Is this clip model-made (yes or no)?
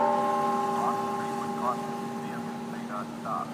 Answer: no